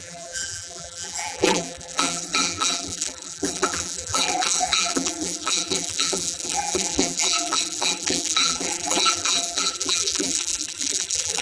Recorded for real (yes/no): no